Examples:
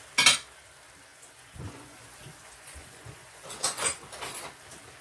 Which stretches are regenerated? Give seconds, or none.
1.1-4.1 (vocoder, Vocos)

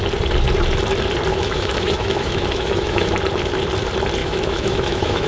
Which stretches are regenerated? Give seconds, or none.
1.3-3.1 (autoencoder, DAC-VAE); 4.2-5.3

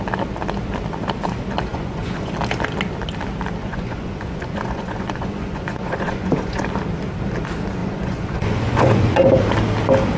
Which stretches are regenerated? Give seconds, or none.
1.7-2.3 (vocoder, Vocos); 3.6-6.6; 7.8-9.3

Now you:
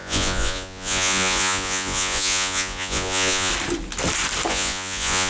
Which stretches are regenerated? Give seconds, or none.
0.0-3.5 (vocoder, Vocos); 4.5-5.3

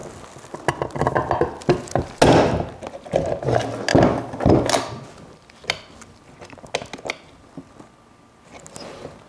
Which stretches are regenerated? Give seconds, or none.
none

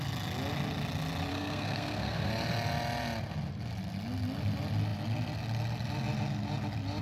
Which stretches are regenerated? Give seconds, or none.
1.3-2.3 (codec, SNAC)

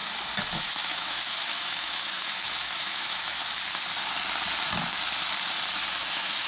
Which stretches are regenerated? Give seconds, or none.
0.7-3.4 (autoencoder, DAC-VAE); 6.1-6.5